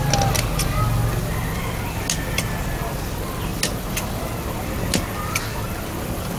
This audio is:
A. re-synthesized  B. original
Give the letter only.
B